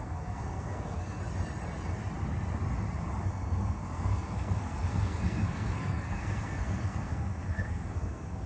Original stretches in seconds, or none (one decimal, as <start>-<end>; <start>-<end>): 1.2-3.2